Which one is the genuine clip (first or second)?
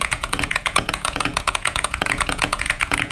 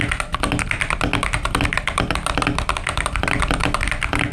second